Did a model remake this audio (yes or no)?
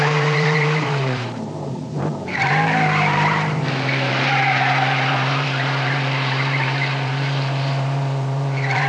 yes